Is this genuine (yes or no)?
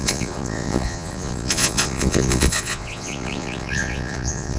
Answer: no